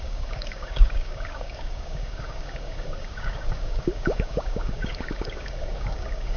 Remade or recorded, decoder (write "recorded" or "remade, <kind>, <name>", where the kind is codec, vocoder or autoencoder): remade, codec, DAC